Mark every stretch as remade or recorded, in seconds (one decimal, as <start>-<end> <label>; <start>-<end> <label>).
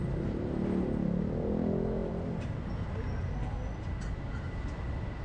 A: 0.0-5.2 recorded